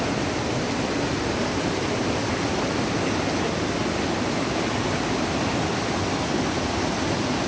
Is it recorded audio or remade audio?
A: recorded